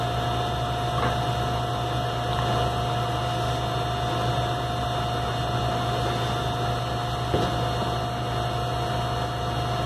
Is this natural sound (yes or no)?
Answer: yes